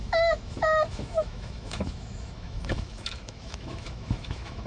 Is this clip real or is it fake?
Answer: fake